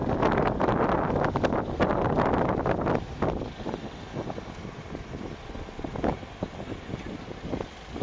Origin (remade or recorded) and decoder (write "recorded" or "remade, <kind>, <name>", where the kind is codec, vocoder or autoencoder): recorded